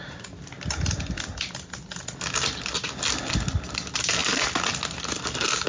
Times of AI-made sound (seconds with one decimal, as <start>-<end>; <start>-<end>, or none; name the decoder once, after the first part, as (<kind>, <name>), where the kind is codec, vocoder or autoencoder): none